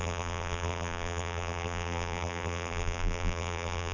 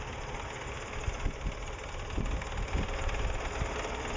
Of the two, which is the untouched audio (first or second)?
second